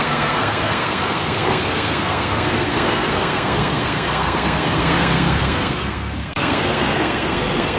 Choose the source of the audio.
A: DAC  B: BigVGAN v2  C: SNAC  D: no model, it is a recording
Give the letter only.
C